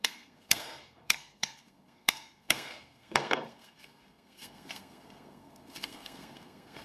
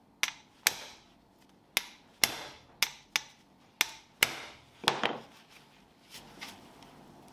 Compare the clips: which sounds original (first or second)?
second